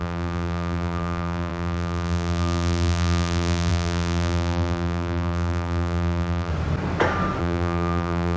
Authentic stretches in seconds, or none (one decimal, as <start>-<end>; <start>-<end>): 6.5-7.4